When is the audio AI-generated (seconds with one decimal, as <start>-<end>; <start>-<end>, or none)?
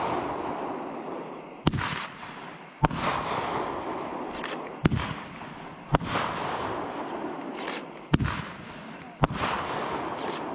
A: none